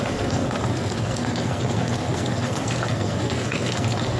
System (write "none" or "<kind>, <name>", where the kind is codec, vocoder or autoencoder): codec, SNAC